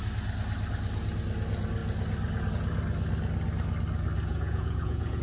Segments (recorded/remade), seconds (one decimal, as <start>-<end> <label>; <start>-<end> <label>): 0.0-4.3 recorded; 4.3-5.2 remade